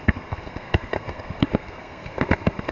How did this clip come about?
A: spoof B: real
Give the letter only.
A